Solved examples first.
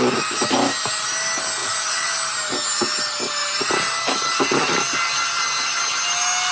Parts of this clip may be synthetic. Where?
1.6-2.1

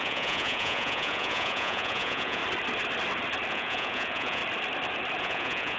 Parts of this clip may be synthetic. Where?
0.0-2.4; 3.5-4.4; 5.2-5.8